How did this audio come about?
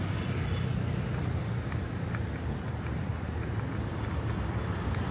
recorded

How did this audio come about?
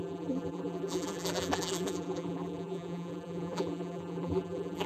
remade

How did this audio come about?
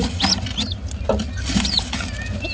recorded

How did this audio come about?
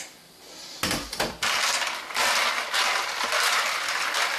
recorded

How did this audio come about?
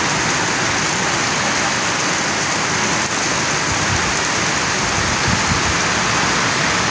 recorded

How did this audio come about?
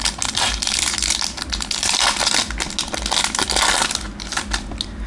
recorded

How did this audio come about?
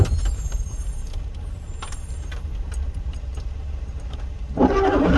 remade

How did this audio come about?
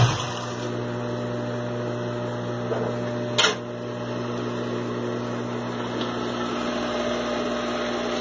recorded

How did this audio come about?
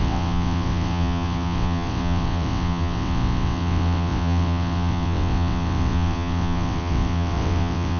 remade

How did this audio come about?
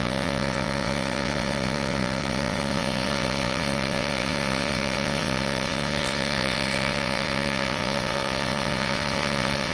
remade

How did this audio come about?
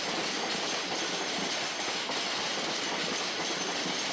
recorded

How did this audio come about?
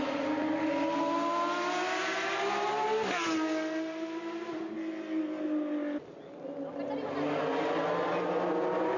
recorded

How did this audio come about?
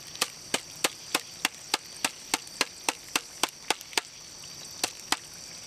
recorded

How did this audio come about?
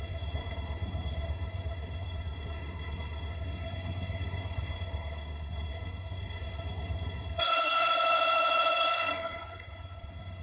remade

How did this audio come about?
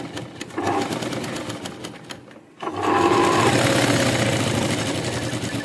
recorded